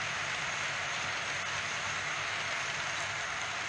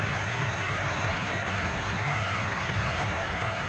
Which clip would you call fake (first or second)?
second